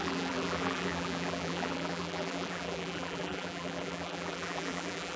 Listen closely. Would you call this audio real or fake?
fake